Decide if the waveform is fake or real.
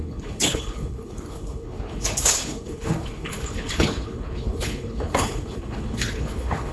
fake